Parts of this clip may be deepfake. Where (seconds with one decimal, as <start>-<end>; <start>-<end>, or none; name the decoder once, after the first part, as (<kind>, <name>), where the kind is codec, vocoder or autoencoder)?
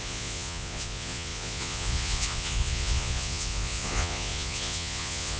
0.0-5.4 (vocoder, Vocos)